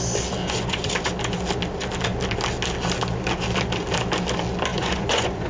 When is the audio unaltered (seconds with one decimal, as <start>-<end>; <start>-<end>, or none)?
0.0-0.4; 0.9-4.7